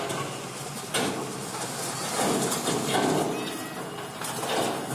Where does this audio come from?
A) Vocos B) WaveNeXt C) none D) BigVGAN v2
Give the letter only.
C